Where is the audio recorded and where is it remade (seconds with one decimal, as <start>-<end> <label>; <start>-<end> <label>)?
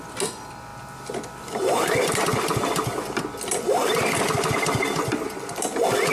0.0-6.1 recorded